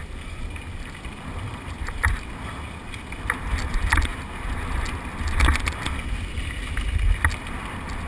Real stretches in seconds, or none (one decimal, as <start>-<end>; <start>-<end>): 2.2-4.1; 5.1-8.1